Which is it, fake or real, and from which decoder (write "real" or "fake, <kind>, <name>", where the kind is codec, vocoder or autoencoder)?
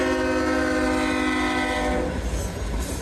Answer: real